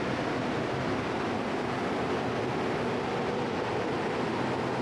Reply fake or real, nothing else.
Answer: real